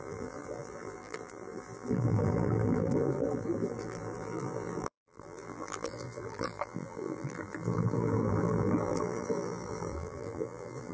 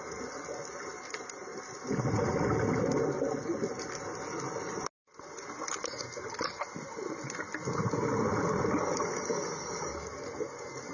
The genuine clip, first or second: second